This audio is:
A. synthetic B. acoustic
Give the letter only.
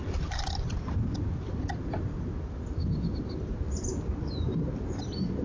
B